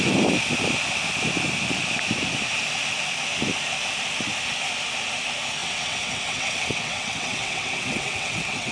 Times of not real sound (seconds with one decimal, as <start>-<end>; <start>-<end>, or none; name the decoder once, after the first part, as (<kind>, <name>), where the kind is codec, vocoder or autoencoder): 5.6-8.7 (vocoder, WaveNeXt)